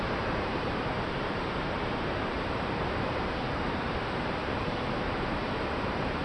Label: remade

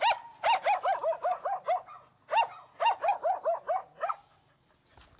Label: recorded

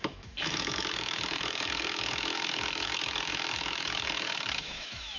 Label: remade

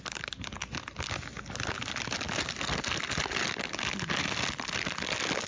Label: recorded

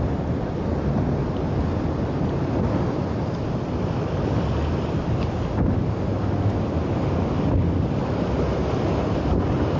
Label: recorded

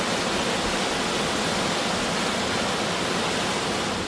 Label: recorded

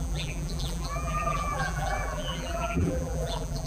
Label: remade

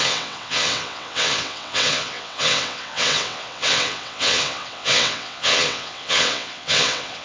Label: remade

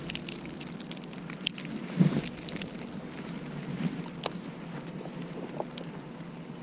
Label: recorded